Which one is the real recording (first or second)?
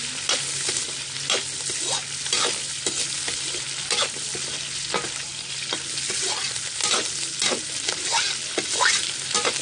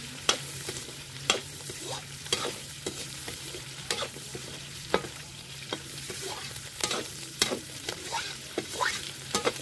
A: first